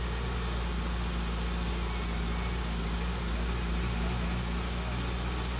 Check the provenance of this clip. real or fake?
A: real